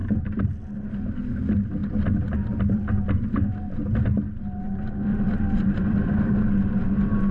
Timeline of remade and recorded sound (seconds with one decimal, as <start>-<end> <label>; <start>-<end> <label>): 0.0-0.5 remade; 0.5-5.1 recorded; 5.1-6.3 remade; 6.3-7.3 recorded